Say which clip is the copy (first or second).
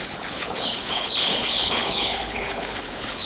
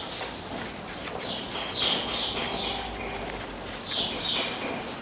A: first